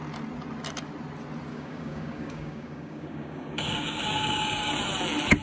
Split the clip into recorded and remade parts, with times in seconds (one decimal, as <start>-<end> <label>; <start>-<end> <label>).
0.0-1.5 recorded; 1.5-4.7 remade; 4.7-5.4 recorded